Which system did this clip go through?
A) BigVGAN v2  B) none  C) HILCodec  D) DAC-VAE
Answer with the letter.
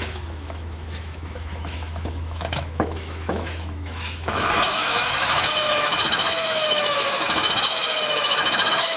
D